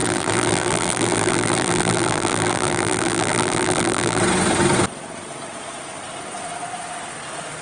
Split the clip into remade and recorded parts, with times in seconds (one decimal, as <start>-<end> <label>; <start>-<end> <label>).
0.0-4.2 remade; 4.2-7.6 recorded